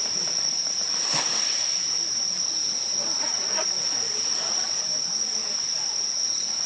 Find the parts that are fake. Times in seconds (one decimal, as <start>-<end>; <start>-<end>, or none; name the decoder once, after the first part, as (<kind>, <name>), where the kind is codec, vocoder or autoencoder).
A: none